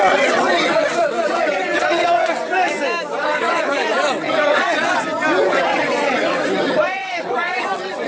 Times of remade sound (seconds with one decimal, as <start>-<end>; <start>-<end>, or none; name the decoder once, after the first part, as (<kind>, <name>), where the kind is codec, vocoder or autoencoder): 0.0-2.4 (vocoder, WaveNeXt); 3.2-4.9; 5.5-8.1